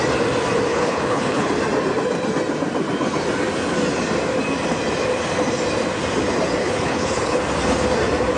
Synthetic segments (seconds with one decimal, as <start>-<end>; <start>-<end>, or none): 0.7-1.5; 6.6-7.4